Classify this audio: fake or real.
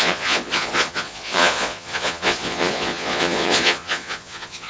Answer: fake